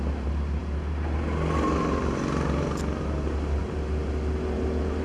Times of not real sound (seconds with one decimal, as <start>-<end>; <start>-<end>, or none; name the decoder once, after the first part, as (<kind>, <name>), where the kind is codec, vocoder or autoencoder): none